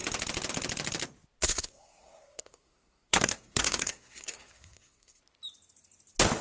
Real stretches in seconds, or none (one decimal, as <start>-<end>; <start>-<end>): 0.0-1.4; 5.2-6.4